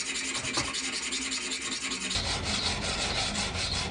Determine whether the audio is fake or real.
real